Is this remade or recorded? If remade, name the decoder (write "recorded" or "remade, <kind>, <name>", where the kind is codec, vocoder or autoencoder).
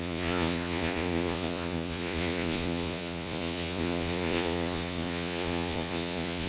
remade, vocoder, Vocos